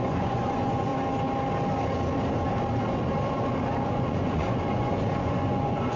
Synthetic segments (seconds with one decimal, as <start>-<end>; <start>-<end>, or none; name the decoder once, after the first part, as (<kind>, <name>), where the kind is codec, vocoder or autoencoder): 0.0-0.9 (vocoder, Vocos); 3.8-6.0